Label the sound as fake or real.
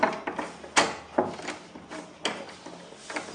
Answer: real